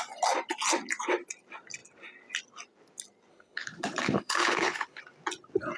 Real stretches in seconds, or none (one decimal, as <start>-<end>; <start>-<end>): 0.0-3.3; 5.0-5.8